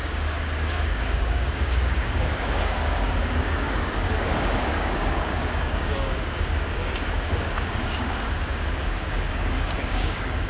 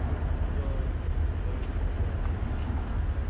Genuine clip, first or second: second